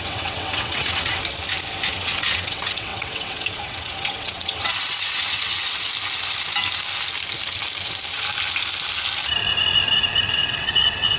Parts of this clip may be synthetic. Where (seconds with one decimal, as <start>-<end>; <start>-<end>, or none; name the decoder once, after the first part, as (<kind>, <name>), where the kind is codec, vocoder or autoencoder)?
0.0-1.2 (vocoder, WaveNeXt); 1.9-5.9; 10.3-11.2